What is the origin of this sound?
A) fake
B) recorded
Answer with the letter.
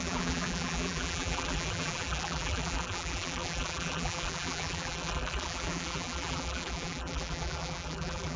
A